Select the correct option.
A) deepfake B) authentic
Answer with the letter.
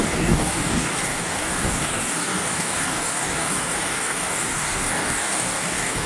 A